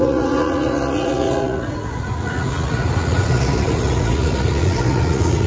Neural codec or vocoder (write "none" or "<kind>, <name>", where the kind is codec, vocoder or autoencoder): vocoder, Vocos